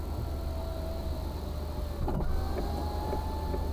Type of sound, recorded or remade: recorded